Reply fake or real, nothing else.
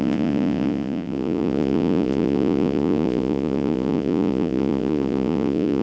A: fake